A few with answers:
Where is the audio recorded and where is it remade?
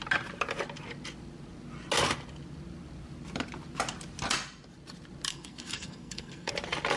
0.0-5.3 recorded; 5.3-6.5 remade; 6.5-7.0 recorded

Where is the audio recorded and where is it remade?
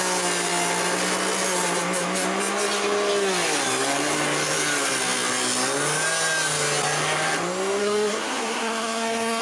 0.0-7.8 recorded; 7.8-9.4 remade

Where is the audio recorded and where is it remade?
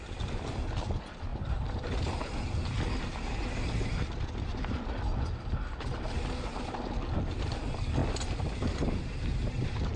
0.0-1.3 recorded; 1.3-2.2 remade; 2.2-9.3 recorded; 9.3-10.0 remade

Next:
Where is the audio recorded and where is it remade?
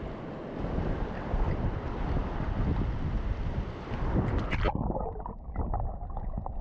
0.0-6.6 recorded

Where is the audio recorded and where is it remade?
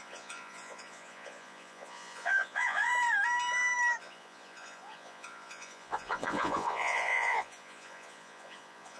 0.0-2.9 remade; 2.9-4.0 recorded; 4.0-9.0 remade